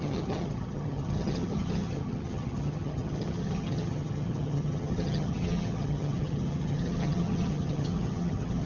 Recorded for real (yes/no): no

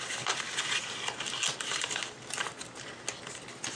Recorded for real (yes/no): yes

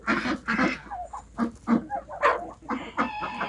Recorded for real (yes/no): yes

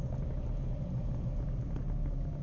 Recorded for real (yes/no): yes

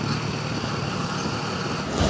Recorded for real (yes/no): yes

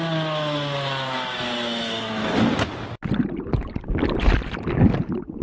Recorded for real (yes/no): yes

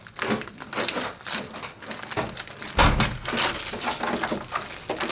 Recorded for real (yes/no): yes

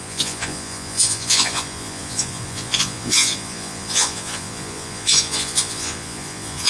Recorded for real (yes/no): no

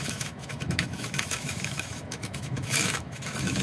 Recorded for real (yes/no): no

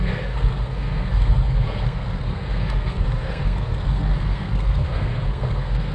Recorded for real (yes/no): no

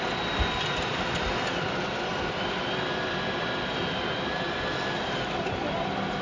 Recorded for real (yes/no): yes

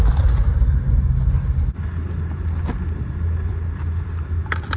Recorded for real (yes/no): yes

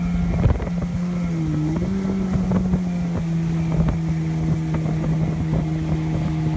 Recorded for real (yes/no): yes